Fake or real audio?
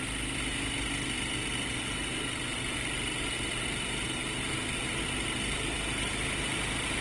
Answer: real